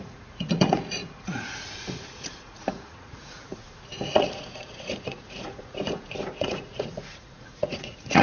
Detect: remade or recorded remade